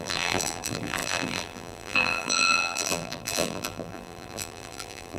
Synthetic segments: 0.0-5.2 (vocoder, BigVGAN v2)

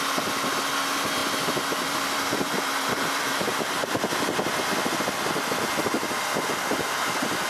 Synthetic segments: 1.2-5.7 (vocoder, BigVGAN v2)

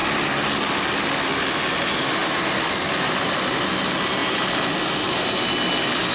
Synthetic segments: 0.0-0.5 (vocoder, BigVGAN v2); 2.2-3.6; 4.2-5.2

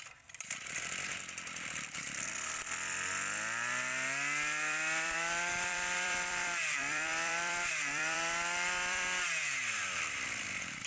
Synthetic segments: 0.0-10.9 (vocoder, BigVGAN v2)

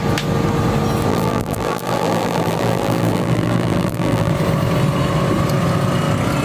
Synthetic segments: 1.1-4.3 (vocoder, BigVGAN v2)

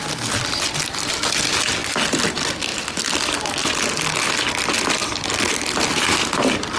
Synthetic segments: none

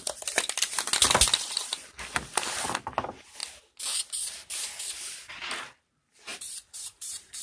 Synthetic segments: 6.3-7.4 (vocoder, BigVGAN v2)